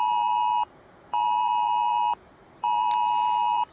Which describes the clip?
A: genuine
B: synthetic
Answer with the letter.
B